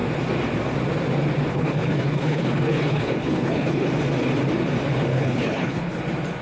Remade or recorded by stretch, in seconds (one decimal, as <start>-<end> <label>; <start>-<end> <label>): 0.0-1.5 recorded; 1.5-3.9 remade; 3.9-5.1 recorded; 5.1-6.0 remade; 6.0-6.4 recorded